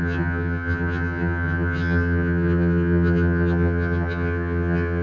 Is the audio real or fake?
fake